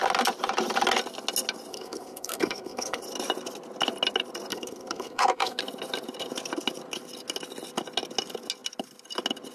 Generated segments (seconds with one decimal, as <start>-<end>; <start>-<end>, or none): 1.7-3.0; 4.5-5.6